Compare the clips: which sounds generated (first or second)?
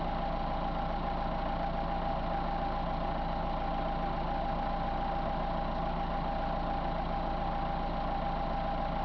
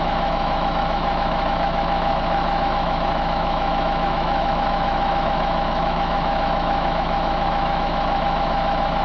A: second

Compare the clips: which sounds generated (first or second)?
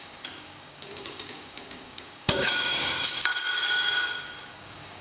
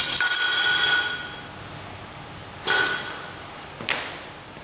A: first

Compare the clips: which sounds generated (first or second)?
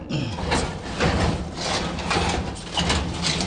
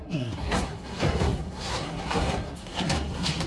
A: second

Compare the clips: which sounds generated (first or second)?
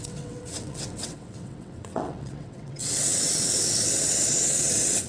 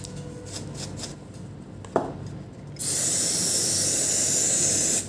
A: first